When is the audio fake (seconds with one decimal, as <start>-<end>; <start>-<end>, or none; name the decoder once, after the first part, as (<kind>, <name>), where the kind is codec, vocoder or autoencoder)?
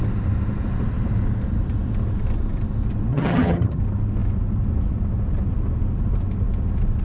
3.1-3.8 (vocoder, HiFi-GAN)